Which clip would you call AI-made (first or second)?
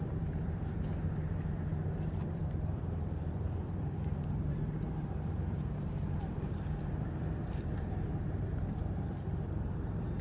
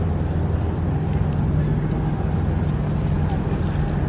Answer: first